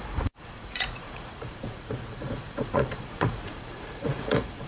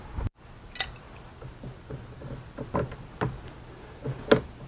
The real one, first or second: second